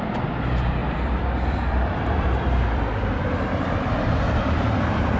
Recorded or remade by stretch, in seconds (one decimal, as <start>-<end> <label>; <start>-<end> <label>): 0.0-0.8 recorded; 0.8-3.9 remade; 3.9-5.2 recorded